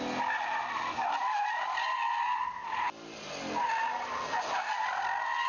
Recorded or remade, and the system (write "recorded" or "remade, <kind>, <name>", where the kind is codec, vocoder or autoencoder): recorded